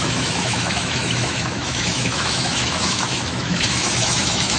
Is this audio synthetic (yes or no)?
yes